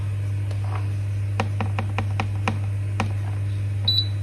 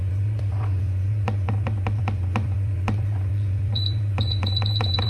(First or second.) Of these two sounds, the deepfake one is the second